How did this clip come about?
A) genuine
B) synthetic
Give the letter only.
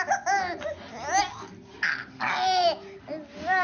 A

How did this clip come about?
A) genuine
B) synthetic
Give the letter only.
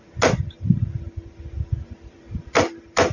A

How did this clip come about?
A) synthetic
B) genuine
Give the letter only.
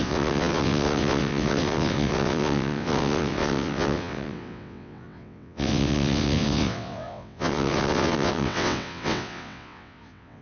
A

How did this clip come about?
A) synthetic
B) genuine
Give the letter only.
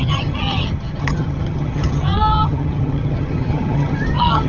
A